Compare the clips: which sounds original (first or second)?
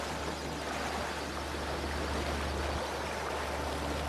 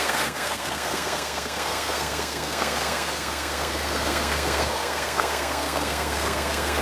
first